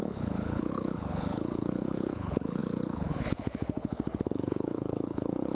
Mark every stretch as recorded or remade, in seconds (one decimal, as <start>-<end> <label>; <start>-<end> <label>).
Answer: 0.0-5.5 remade